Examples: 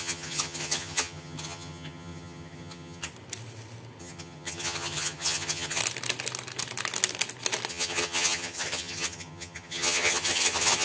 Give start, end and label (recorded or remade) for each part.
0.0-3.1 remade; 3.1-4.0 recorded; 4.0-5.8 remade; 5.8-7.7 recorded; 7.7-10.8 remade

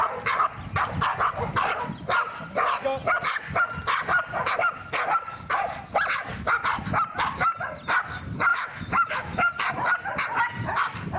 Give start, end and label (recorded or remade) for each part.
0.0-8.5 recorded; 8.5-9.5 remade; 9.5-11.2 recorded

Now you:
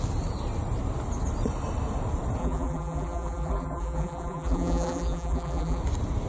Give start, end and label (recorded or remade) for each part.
0.0-2.4 recorded; 2.4-5.8 remade; 5.8-6.3 recorded

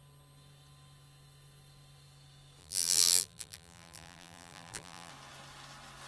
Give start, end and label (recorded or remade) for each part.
0.0-2.6 recorded; 2.6-5.1 remade; 5.1-6.1 recorded

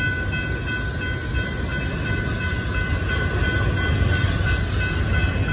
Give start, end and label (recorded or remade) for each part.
0.0-5.5 recorded

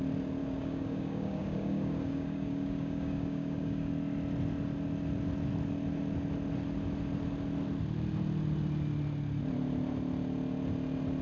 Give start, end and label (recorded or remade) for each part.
0.0-0.4 recorded; 0.4-3.9 remade; 3.9-11.2 recorded

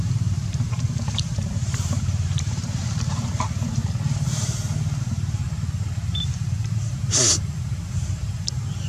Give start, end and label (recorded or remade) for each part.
0.0-3.8 remade; 3.8-5.0 recorded; 5.0-5.4 remade; 5.4-6.1 recorded; 6.1-8.9 remade